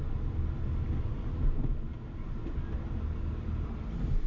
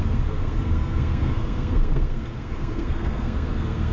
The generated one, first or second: second